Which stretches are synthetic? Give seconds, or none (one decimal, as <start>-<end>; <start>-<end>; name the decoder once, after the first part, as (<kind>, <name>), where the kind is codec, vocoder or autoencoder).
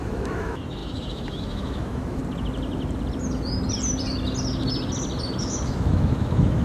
0.0-2.2 (autoencoder, DAC-VAE); 5.4-6.6